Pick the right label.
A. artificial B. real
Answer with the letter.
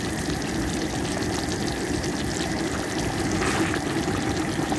A